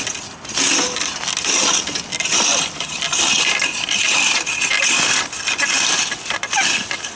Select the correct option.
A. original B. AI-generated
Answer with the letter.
A